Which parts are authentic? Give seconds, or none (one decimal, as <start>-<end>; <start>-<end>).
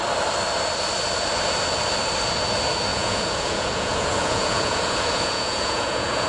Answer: 0.0-2.9